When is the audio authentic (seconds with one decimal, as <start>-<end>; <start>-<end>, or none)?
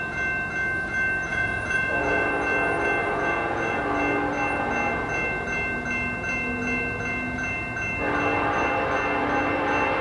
0.0-1.3; 2.3-3.0; 3.8-10.0